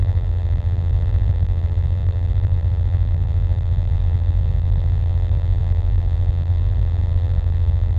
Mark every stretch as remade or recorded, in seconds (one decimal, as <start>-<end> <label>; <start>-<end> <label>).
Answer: 0.0-8.0 remade